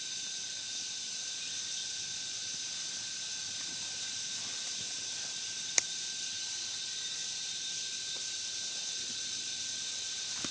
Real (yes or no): yes